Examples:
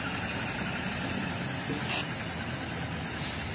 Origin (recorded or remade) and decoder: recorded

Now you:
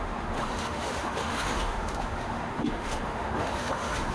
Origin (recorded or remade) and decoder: remade, autoencoder, DAC-VAE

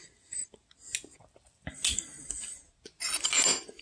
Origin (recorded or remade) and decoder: recorded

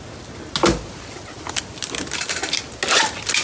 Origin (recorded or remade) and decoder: recorded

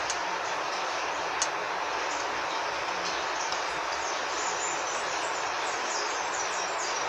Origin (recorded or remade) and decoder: recorded